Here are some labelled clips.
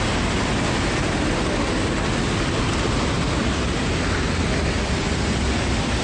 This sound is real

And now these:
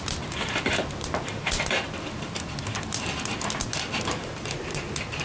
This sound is real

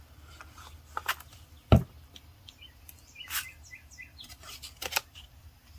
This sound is real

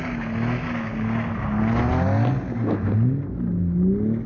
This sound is real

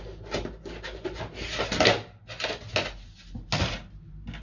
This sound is real